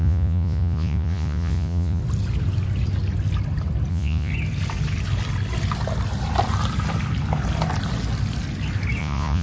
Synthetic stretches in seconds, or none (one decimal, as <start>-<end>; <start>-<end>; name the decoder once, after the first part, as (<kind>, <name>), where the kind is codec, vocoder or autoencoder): 0.0-2.0 (vocoder, Vocos); 3.9-4.3; 9.0-9.4